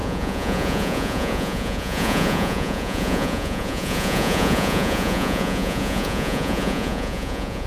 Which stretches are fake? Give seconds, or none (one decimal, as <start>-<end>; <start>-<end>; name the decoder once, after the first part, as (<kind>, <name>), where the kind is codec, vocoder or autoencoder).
0.0-7.7 (vocoder, Vocos)